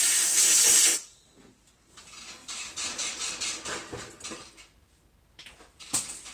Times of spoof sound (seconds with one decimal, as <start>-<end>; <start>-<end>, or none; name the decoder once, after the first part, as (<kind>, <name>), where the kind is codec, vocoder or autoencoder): 0.9-1.9 (vocoder, BigVGAN v2); 2.4-3.7